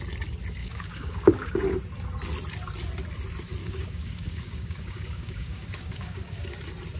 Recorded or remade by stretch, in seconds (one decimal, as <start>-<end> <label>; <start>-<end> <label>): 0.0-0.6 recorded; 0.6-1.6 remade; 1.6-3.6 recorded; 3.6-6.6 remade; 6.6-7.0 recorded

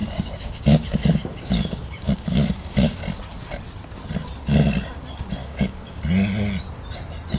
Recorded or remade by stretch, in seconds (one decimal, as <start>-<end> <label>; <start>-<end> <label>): 0.0-3.0 remade; 3.0-5.4 recorded; 5.4-6.0 remade; 6.0-7.4 recorded

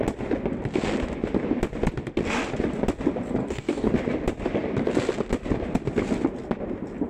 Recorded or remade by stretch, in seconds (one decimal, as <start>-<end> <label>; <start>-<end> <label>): 0.0-3.4 recorded; 3.4-3.9 remade; 3.9-7.1 recorded